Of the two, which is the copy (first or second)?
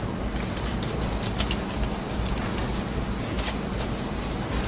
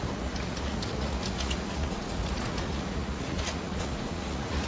second